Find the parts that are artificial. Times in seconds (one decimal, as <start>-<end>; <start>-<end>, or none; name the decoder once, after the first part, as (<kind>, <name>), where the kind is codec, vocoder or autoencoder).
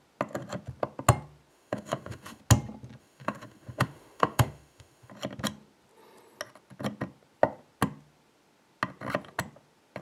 1.5-2.4 (autoencoder, DAC-VAE); 3.0-5.1